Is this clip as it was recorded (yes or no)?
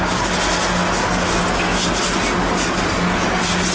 yes